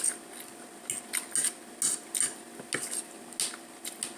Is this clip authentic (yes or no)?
yes